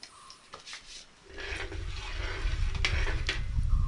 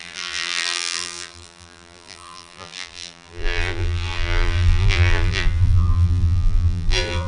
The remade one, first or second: second